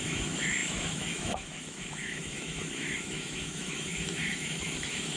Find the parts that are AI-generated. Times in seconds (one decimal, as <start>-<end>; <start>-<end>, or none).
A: 0.0-5.2